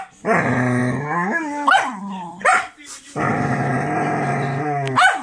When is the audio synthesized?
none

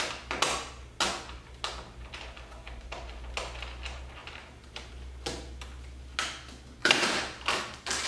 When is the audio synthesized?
4.2-4.9; 6.8-8.1

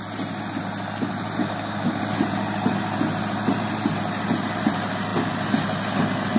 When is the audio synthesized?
1.4-2.0

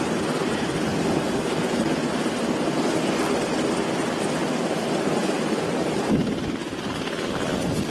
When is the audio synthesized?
none

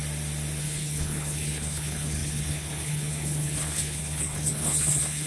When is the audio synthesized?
0.6-5.3

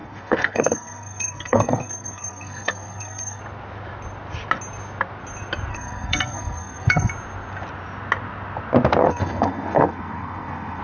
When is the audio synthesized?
0.0-3.4; 5.7-7.1; 9.0-10.8